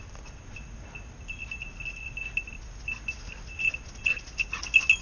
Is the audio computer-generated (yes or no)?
no